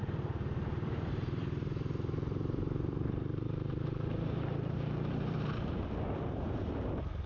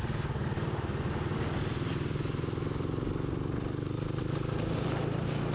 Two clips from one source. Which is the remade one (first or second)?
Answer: first